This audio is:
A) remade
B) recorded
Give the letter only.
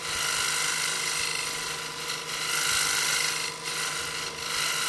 B